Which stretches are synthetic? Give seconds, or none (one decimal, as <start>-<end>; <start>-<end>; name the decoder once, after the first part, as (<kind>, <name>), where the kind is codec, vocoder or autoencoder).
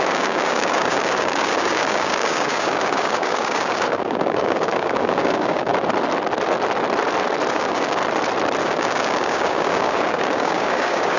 0.0-5.7 (codec, DAC); 7.5-8.0; 8.6-11.2